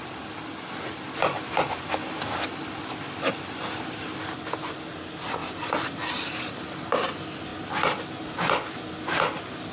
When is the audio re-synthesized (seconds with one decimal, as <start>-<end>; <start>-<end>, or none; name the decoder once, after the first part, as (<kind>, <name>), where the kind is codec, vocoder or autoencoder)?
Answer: 2.0-2.8 (vocoder, BigVGAN v2); 5.4-7.1